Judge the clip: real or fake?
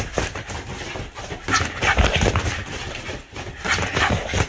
real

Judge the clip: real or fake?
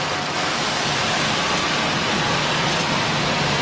real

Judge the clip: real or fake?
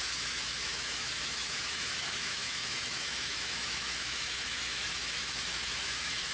fake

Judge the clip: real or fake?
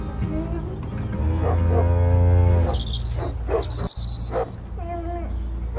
real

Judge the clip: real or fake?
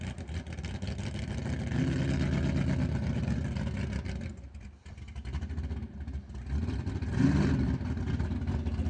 real